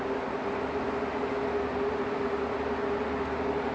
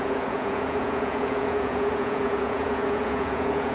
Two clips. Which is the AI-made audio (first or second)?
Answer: second